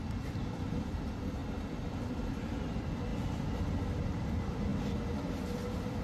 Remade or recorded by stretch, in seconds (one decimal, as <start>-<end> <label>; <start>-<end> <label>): 0.0-1.4 remade; 1.4-2.4 recorded; 2.4-4.7 remade; 4.7-5.2 recorded; 5.2-6.0 remade